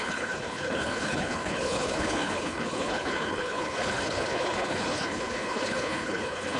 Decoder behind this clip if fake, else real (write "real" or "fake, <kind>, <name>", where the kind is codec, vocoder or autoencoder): fake, codec, HILCodec